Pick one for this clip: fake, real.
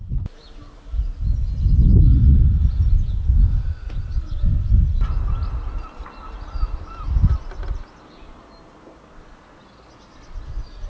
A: real